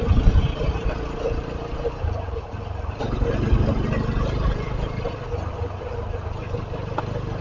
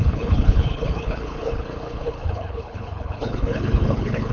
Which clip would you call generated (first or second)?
second